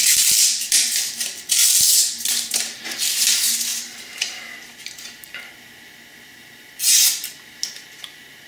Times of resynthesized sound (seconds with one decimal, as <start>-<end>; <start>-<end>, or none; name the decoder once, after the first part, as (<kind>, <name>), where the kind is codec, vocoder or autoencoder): 0.0-2.8 (vocoder, BigVGAN v2); 3.7-4.8

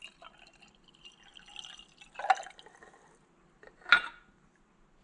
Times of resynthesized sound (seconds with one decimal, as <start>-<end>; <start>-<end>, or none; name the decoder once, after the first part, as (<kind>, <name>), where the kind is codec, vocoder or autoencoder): none

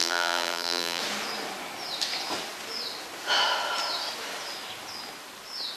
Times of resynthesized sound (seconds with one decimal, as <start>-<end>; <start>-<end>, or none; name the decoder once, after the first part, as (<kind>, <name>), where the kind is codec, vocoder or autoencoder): 0.0-1.0 (vocoder, BigVGAN v2)

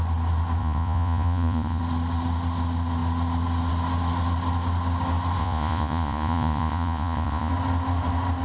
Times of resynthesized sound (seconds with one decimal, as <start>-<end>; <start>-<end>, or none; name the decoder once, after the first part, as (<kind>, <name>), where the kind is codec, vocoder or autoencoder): 0.6-1.8 (vocoder, Vocos); 5.4-7.5

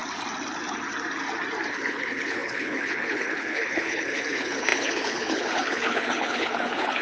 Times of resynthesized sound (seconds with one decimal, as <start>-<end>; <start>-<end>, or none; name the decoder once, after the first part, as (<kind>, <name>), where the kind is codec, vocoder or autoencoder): 1.7-7.0 (codec, HILCodec)